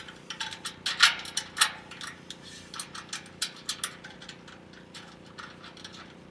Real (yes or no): yes